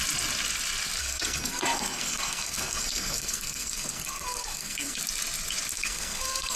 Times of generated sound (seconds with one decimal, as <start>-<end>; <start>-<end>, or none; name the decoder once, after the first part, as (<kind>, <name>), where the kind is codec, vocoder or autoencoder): 1.0-5.0 (codec, SNAC); 5.7-6.6